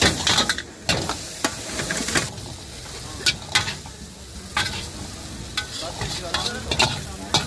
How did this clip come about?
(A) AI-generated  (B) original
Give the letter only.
B